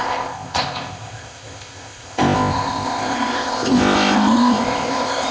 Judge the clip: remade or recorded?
remade